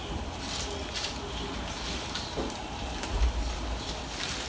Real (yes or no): yes